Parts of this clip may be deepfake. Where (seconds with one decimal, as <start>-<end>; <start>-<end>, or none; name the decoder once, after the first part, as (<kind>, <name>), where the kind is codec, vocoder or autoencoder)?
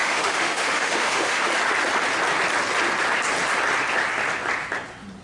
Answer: 0.0-1.5 (autoencoder, DAC-VAE)